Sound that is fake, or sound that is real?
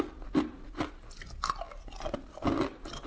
real